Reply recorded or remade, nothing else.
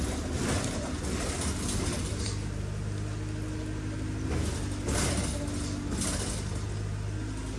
recorded